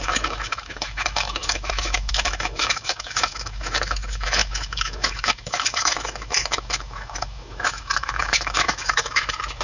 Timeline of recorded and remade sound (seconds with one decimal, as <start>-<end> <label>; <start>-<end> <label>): 0.0-9.6 remade

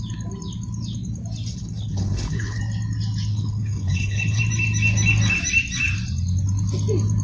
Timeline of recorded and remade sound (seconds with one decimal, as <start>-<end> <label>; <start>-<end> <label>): 0.0-1.5 recorded; 1.5-2.6 remade; 2.6-3.3 recorded; 3.3-4.4 remade; 4.4-7.2 recorded

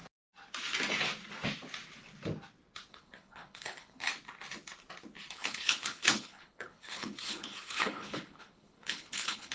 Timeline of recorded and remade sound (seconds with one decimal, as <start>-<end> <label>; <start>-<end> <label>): 0.0-2.9 recorded; 2.9-4.1 remade; 4.1-5.3 recorded; 5.3-9.5 remade

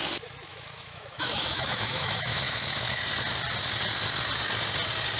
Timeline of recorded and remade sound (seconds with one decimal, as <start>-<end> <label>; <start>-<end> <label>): 0.0-0.5 recorded; 0.5-3.0 remade; 3.0-5.2 recorded

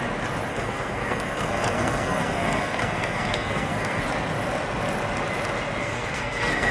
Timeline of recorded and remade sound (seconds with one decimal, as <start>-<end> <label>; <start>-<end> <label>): 0.0-0.5 recorded; 0.5-4.0 remade; 4.0-5.8 recorded; 5.8-6.7 remade

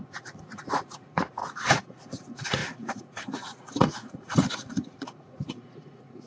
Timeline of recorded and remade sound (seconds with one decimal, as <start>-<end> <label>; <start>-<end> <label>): 0.0-6.3 remade